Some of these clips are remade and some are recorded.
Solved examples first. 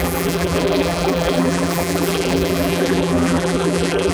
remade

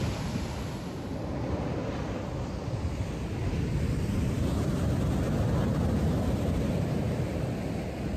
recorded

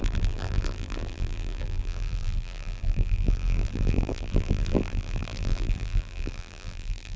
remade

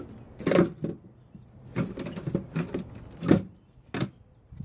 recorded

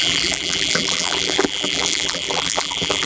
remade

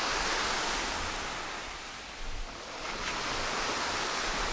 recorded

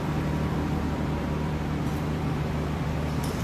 remade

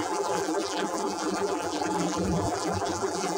remade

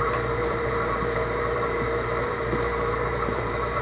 remade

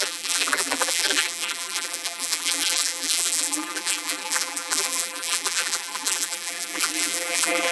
remade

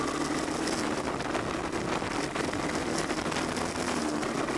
recorded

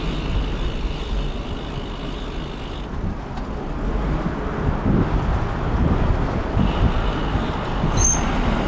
recorded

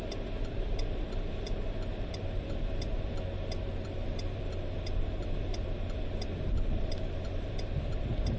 remade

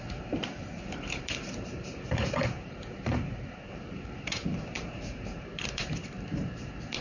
remade